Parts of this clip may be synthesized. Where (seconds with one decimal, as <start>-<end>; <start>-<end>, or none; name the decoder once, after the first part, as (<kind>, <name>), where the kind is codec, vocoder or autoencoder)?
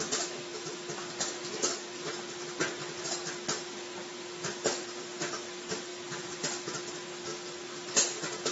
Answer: 5.9-6.8 (vocoder, BigVGAN v2)